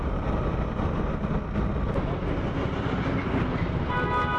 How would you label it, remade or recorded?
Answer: recorded